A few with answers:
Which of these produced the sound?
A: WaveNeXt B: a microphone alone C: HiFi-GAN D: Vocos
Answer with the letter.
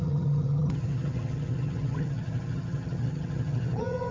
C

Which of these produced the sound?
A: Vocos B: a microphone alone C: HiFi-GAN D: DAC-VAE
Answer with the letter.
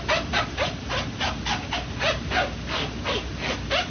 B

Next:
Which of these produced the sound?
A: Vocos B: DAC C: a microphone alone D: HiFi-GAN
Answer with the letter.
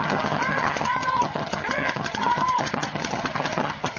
D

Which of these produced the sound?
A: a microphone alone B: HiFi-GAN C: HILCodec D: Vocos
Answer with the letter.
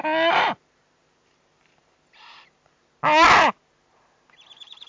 A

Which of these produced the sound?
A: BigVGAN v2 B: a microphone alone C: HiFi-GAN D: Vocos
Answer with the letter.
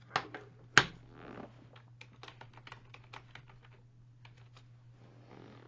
B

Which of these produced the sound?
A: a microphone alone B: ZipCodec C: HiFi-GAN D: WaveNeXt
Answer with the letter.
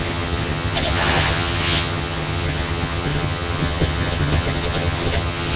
C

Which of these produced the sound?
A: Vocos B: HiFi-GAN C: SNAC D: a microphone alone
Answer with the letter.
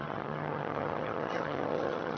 B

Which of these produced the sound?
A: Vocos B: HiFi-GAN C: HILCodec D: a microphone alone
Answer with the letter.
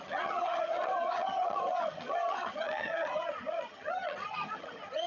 B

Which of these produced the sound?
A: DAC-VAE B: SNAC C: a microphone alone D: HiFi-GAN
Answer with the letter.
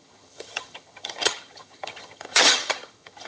D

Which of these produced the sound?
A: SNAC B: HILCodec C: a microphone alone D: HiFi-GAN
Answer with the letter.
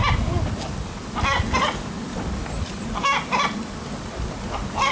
C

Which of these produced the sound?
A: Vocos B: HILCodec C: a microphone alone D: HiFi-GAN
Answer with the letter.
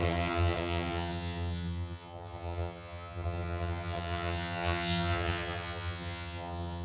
D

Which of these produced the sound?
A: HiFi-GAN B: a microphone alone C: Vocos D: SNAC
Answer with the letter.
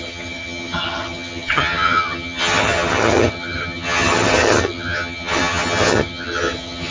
A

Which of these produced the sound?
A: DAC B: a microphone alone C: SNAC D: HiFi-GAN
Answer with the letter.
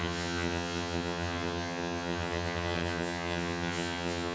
D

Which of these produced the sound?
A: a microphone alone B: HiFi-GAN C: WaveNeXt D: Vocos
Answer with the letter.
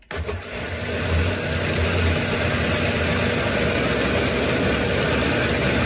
A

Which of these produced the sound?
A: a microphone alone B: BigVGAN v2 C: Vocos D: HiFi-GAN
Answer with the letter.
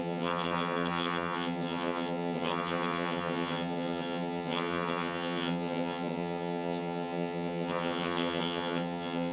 D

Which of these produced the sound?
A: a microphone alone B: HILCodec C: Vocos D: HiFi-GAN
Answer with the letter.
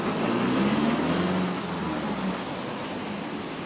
A